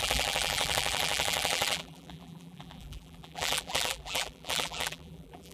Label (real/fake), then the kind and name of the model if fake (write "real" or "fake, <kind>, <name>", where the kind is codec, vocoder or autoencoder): fake, vocoder, BigVGAN v2